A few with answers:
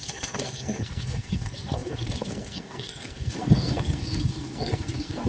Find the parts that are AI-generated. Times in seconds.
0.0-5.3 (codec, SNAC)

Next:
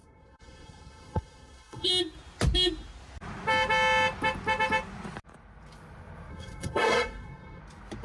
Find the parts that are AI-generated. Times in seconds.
0.0-1.9 (codec, SNAC); 6.3-7.6

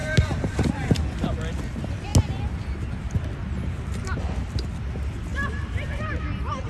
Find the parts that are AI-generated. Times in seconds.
0.0-0.9 (vocoder, BigVGAN v2); 5.3-6.2